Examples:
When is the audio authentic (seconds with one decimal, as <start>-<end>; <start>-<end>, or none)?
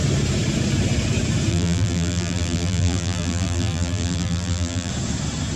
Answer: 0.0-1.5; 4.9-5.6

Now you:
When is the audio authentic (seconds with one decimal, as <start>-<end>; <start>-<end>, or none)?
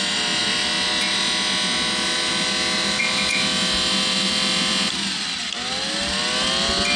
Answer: 0.0-7.0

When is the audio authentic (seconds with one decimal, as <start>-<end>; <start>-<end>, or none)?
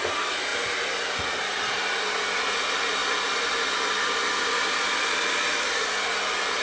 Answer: 0.0-6.6